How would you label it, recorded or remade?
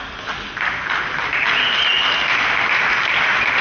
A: recorded